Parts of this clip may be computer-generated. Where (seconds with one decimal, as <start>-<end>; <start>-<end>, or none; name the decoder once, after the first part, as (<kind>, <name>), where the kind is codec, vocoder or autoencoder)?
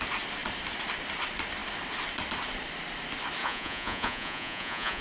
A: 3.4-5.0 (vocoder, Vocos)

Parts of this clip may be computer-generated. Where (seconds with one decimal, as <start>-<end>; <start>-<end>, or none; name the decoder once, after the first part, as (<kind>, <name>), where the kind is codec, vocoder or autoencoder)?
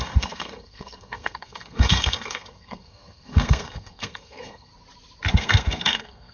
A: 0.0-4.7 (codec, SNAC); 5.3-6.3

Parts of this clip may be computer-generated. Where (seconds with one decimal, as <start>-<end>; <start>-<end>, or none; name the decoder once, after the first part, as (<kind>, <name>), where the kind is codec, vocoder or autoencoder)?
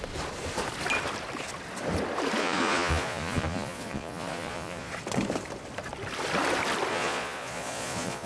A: 2.4-4.9 (vocoder, Vocos); 6.9-8.3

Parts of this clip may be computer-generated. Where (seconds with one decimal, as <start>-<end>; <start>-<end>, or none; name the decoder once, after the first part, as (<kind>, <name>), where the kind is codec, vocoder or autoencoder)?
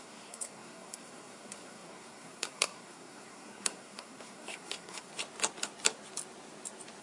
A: 0.0-5.1 (codec, SNAC)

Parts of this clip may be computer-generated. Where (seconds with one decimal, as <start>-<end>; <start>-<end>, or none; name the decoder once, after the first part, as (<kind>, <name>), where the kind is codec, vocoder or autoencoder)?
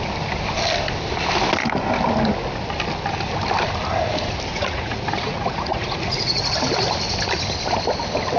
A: 4.5-6.4 (vocoder, Vocos)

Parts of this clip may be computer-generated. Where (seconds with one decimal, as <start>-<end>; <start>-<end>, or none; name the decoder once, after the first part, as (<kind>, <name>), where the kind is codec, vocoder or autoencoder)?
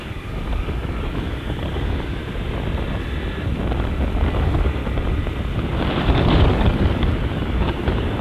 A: 0.0-2.2 (codec, DAC); 4.3-4.8; 6.0-8.2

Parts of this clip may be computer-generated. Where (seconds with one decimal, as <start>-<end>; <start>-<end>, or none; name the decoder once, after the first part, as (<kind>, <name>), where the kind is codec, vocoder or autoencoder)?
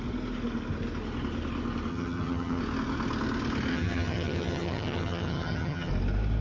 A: 1.9-2.6 (vocoder, HiFi-GAN); 3.7-5.9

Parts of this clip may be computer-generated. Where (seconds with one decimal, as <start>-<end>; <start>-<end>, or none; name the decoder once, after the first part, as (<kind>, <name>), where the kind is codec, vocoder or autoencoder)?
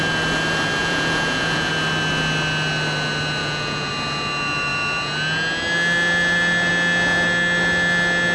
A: 0.8-1.7 (vocoder, Vocos); 3.4-3.9